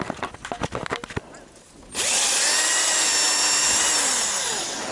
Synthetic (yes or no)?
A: no